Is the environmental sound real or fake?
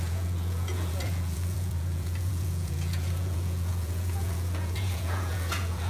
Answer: fake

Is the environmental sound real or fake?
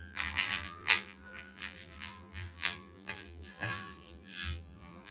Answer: fake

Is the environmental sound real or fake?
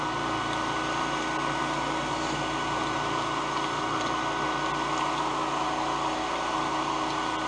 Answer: real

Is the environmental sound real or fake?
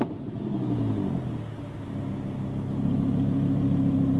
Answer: real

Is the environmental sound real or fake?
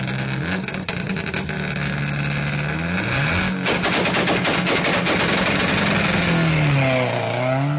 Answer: real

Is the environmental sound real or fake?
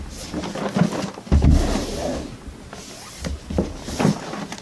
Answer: real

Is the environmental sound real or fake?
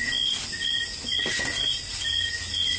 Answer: real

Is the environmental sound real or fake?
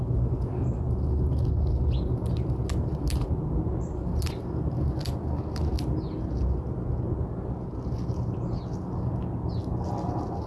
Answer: real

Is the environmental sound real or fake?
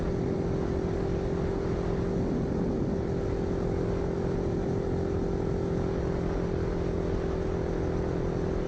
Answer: real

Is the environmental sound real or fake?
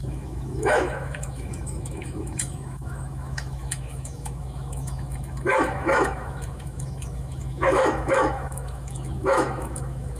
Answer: fake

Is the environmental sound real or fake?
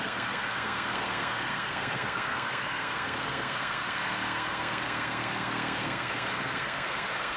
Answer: fake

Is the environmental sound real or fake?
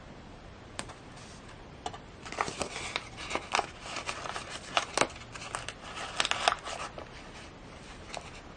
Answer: real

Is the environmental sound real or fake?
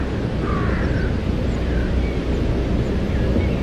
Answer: real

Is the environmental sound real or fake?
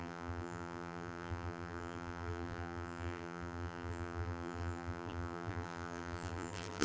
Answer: fake